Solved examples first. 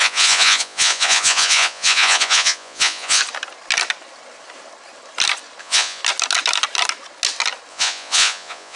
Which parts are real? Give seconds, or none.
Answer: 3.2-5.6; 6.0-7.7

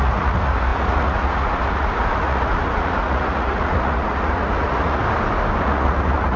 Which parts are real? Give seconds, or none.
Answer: 5.0-5.6

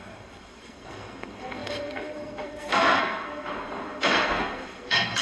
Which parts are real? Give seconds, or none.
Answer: none

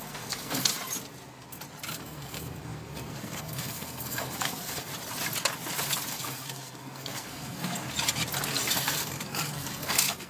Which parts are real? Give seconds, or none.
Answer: 0.7-1.9; 4.9-6.1; 7.8-8.7

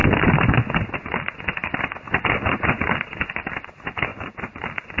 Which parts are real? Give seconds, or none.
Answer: 0.0-5.0

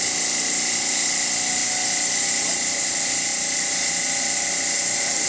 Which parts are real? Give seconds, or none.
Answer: 0.0-5.3

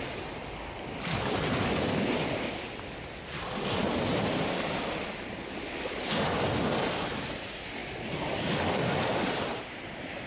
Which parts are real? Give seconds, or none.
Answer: 0.0-10.3

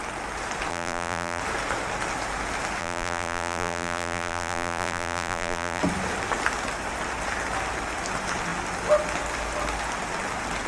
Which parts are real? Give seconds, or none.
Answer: 0.0-0.7; 1.4-2.8; 5.8-10.7